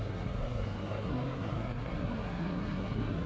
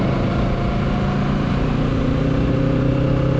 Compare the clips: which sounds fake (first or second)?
first